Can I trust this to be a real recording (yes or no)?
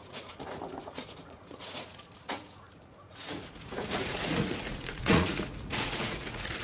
no